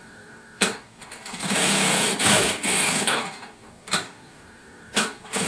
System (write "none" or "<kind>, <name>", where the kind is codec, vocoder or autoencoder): codec, DAC